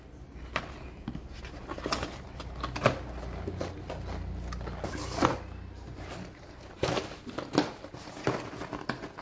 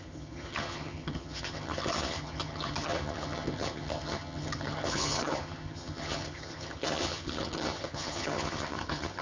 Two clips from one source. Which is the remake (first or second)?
second